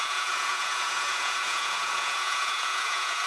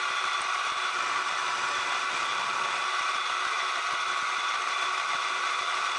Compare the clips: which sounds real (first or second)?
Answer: second